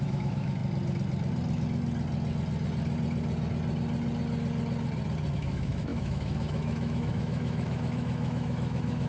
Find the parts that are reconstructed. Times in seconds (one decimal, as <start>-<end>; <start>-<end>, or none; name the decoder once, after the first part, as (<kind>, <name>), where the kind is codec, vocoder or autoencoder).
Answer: 0.0-0.6 (autoencoder, DAC-VAE); 5.3-9.1